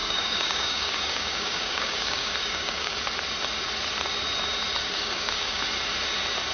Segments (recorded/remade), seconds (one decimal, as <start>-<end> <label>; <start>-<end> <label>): 0.0-3.0 remade; 3.0-4.8 recorded; 4.8-5.6 remade; 5.6-6.5 recorded